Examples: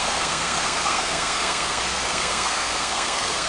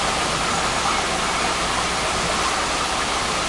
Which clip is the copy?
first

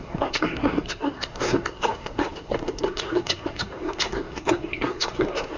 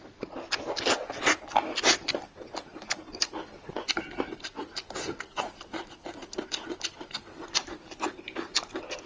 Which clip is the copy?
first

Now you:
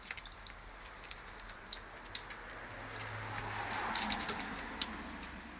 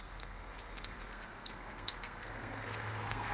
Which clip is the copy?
second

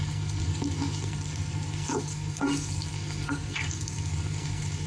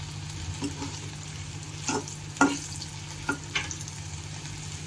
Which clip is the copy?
first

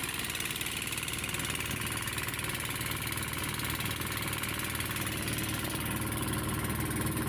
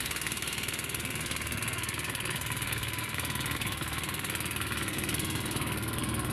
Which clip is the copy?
second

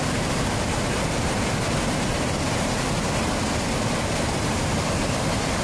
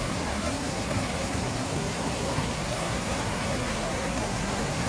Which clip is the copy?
second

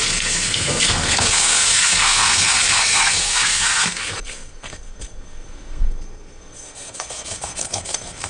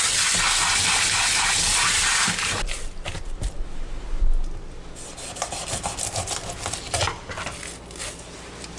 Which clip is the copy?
first